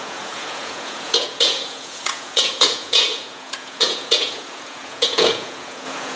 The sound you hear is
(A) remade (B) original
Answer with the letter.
A